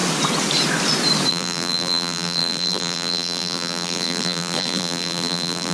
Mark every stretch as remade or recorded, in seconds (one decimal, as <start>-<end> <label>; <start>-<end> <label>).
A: 0.0-1.3 recorded; 1.3-5.7 remade